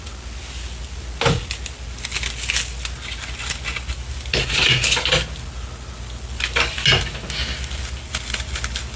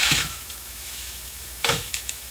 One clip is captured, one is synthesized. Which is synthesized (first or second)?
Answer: second